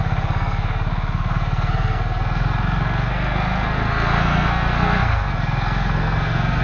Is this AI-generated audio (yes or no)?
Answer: yes